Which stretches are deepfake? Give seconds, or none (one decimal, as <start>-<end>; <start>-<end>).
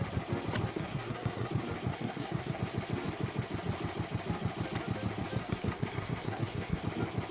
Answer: 0.7-1.5; 1.9-2.6; 5.4-6.8